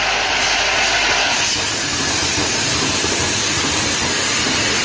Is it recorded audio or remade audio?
recorded